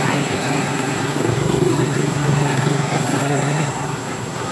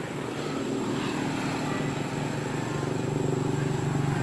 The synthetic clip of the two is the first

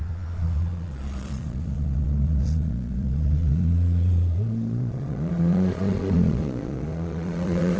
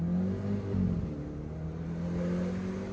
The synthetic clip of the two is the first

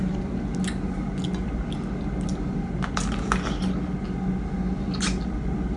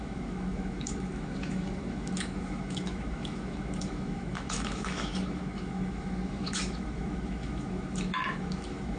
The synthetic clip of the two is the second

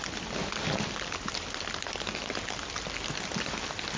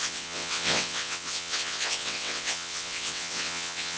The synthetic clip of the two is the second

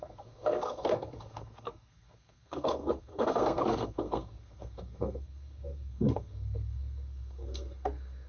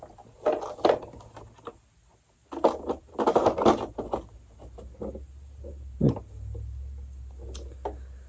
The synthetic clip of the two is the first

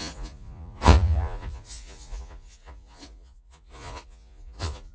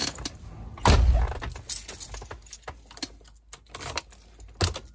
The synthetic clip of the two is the first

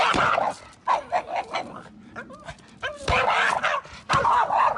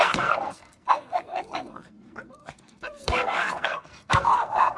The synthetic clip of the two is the second